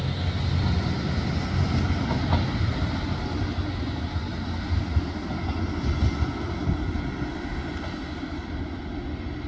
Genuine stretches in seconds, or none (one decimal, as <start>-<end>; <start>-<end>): 0.0-9.5